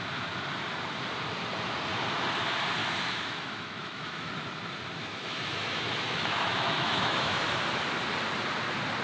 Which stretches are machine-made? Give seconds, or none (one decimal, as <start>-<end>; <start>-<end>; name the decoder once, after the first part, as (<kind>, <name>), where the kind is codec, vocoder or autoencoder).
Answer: 2.8-4.3 (autoencoder, DAC-VAE); 5.0-7.4